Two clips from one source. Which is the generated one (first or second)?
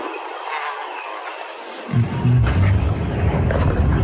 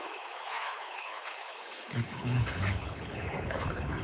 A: second